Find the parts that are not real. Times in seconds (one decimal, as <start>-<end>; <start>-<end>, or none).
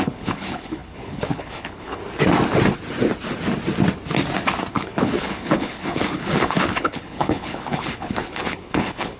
0.0-2.0; 4.7-9.2